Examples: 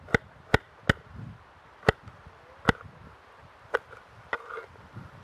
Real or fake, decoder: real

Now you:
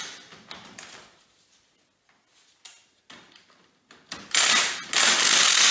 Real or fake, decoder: real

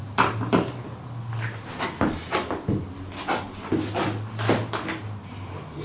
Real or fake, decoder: real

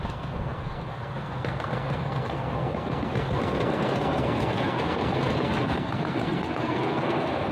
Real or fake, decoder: fake, codec, SNAC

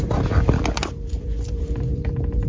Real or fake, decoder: fake, vocoder, BigVGAN v2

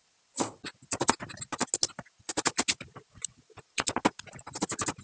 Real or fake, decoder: real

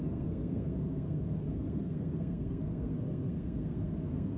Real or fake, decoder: fake, codec, SNAC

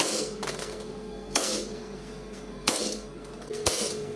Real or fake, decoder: fake, codec, SNAC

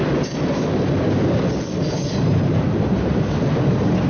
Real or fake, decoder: real